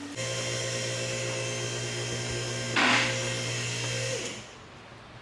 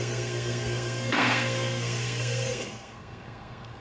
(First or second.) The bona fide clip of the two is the first